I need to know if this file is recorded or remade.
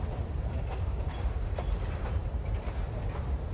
remade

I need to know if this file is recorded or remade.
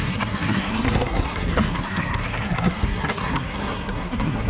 remade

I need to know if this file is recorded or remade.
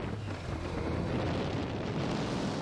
recorded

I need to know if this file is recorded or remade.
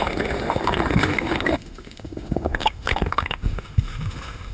remade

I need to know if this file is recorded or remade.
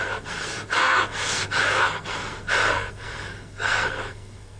remade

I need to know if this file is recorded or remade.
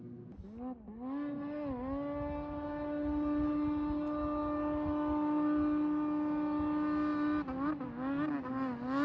recorded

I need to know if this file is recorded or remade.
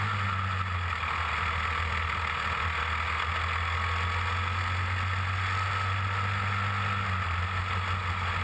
recorded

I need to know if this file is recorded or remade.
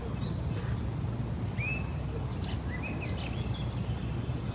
recorded